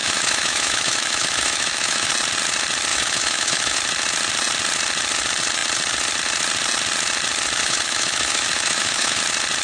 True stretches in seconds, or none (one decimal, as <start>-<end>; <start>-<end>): 2.1-2.9; 3.8-7.6; 9.2-9.6